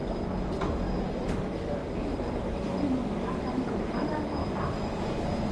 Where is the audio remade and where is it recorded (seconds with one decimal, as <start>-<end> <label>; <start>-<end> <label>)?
0.0-1.0 recorded; 1.0-1.8 remade; 1.8-2.4 recorded; 2.4-4.4 remade; 4.4-5.5 recorded